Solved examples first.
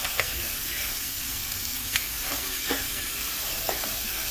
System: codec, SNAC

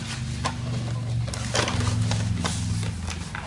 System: none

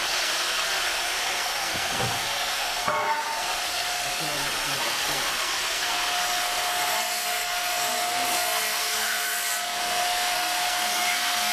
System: codec, SNAC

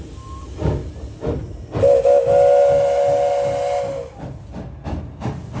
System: none